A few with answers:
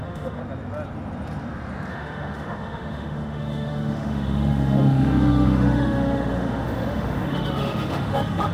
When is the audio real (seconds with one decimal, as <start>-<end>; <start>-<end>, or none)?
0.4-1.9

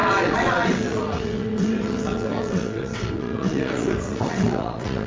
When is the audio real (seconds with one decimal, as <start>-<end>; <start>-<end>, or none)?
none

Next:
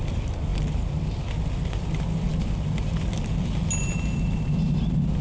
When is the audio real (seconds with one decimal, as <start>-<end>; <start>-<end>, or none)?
0.0-5.2

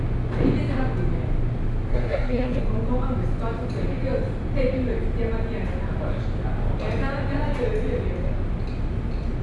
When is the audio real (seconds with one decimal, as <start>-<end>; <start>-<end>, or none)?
0.0-1.9; 2.6-9.4

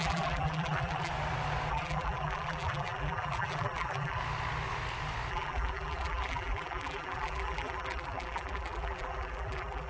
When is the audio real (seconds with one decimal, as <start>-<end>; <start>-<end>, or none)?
1.1-1.7; 4.2-5.3